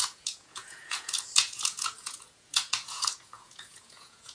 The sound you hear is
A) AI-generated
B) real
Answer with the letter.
A